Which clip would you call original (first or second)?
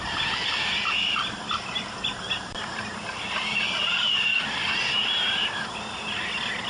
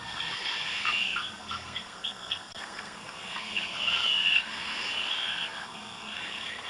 first